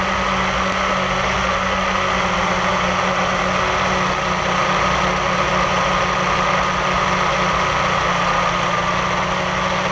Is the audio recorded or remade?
recorded